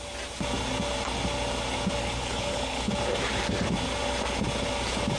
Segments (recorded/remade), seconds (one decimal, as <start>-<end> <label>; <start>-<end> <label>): 0.0-2.0 recorded; 2.0-2.9 remade; 2.9-5.2 recorded